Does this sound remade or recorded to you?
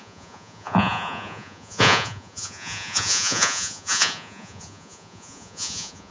remade